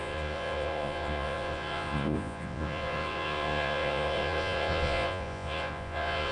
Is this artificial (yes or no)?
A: yes